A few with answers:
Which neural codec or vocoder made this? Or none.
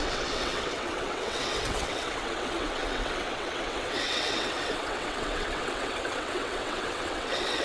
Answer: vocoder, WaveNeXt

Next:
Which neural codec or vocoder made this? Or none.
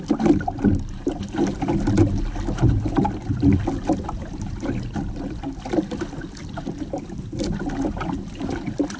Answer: none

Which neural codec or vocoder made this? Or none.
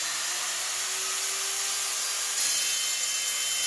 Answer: none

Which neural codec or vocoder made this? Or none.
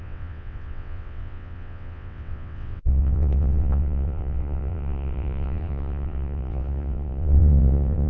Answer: vocoder, WaveNeXt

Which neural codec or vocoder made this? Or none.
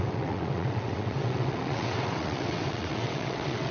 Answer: vocoder, WaveNeXt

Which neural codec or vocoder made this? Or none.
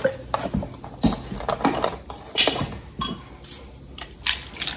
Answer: none